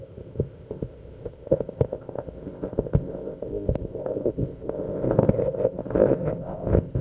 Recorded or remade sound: remade